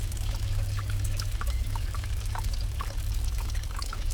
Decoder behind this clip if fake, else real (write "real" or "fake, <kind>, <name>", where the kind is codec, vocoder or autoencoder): fake, codec, DAC